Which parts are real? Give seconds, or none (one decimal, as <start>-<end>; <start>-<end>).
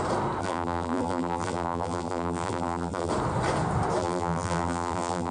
0.0-0.4; 3.1-4.0